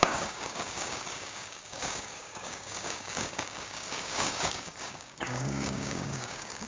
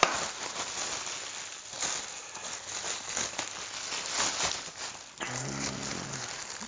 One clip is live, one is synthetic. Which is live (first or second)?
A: second